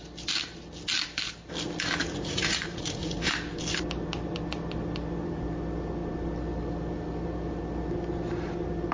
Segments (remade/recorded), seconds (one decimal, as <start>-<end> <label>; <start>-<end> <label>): 0.0-2.0 recorded; 2.0-3.3 remade; 3.3-8.9 recorded